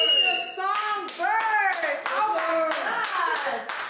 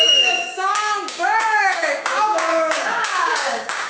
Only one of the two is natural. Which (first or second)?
first